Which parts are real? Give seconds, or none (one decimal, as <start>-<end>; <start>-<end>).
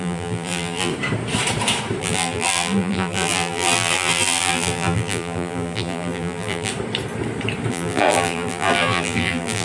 0.9-2.0; 6.7-7.7